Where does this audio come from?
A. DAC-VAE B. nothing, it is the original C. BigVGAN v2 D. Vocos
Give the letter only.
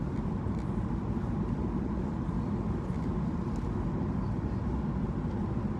B